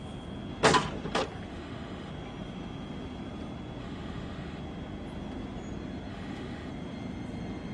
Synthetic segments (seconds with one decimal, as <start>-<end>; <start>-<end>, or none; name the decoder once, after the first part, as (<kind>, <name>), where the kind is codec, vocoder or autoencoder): 1.5-2.1 (autoencoder, DAC-VAE); 3.8-4.6; 6.1-6.7